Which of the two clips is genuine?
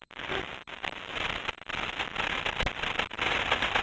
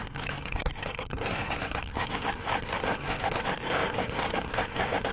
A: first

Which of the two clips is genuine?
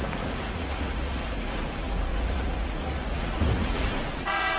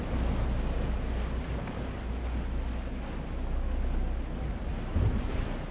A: second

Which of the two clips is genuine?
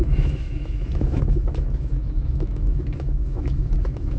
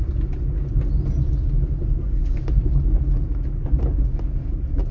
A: second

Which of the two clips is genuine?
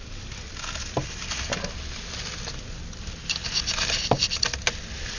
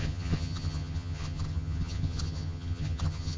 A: first